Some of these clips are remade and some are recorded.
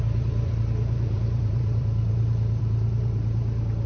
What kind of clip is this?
remade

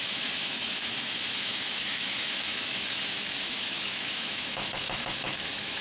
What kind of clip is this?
remade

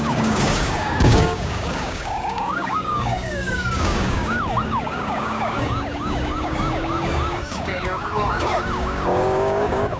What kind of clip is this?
remade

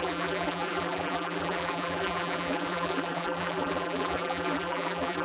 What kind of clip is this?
remade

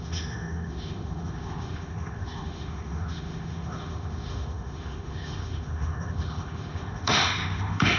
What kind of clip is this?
remade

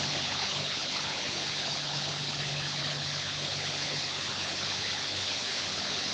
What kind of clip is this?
remade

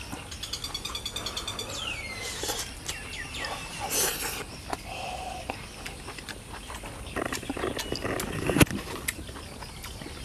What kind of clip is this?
recorded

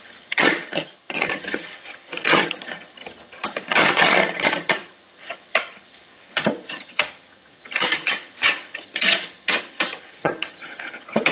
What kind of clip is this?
remade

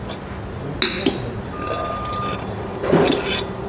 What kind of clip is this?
recorded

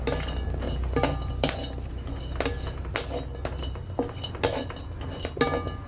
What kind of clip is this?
recorded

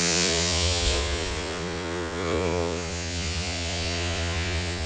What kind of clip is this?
remade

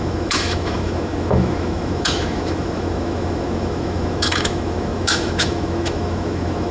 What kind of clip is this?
remade